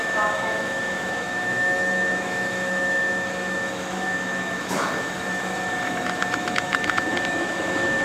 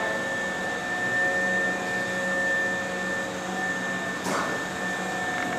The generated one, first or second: first